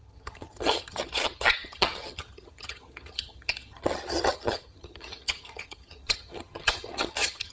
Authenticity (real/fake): fake